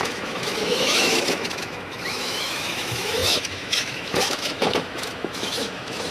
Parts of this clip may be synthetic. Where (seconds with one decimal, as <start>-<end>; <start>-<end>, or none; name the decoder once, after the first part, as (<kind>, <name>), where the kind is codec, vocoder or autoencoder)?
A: 0.0-6.1 (autoencoder, DAC-VAE)